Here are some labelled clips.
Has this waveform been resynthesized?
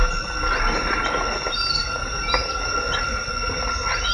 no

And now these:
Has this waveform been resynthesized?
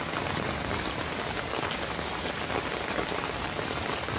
no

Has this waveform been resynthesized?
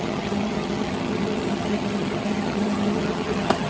yes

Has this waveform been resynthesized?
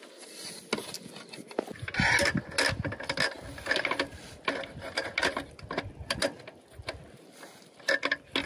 no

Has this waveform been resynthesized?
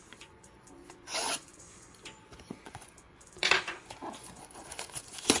yes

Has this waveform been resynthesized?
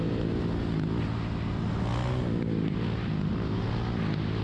no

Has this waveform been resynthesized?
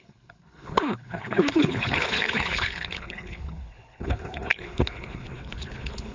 yes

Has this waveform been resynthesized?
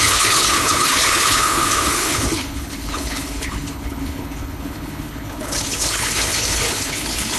yes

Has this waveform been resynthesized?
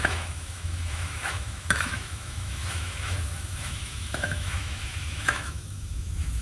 yes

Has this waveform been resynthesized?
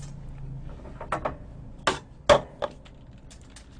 no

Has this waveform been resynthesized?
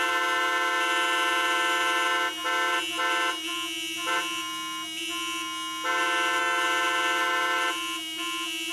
no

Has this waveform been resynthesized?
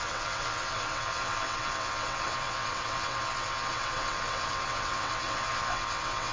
yes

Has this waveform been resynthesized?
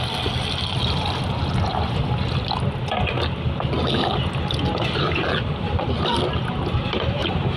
no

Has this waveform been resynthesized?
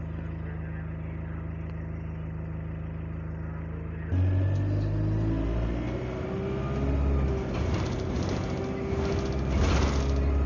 no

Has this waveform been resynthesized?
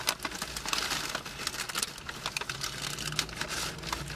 no